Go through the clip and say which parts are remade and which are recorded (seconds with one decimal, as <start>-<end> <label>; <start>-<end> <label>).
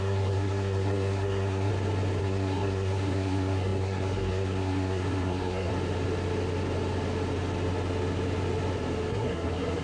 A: 0.0-1.7 remade; 1.7-2.2 recorded; 2.2-5.7 remade; 5.7-9.1 recorded; 9.1-9.8 remade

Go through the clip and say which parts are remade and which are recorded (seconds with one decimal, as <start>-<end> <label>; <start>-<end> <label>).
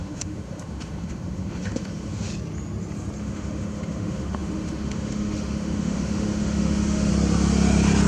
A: 0.0-2.3 remade; 2.3-3.2 recorded; 3.2-7.1 remade; 7.1-8.1 recorded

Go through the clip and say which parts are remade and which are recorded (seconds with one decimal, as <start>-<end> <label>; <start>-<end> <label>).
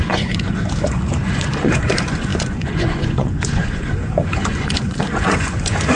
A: 0.0-6.0 remade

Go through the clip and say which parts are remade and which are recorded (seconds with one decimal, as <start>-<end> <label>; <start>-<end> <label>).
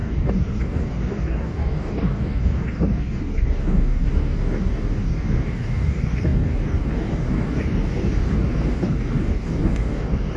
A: 0.0-10.4 remade